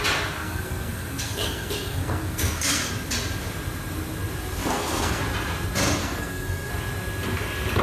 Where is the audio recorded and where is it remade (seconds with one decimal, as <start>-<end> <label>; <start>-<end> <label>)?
0.0-0.4 recorded; 0.4-2.9 remade; 2.9-4.6 recorded; 4.6-5.2 remade; 5.2-6.0 recorded; 6.0-6.7 remade; 6.7-7.8 recorded